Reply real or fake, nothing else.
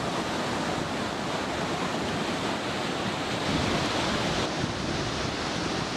real